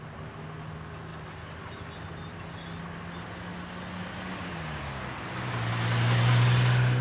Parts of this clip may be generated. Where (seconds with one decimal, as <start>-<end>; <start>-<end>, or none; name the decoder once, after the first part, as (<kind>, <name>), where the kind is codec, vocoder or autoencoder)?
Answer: none